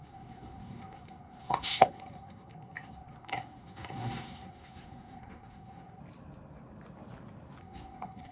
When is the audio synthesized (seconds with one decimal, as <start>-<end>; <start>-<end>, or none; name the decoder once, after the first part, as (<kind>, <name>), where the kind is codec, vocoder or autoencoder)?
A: 0.0-6.0 (codec, SNAC); 7.6-8.3